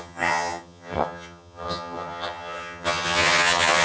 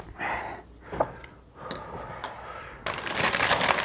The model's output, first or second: first